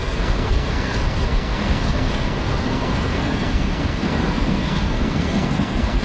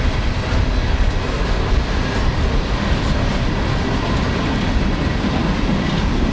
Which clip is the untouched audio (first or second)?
second